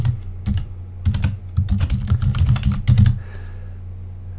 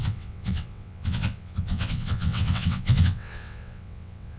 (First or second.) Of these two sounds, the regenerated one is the second